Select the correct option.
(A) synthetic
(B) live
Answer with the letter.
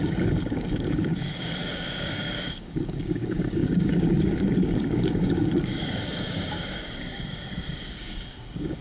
A